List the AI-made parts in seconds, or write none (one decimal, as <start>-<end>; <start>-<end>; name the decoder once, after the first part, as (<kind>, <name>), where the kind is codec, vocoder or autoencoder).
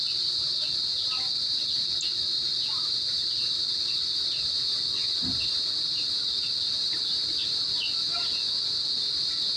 none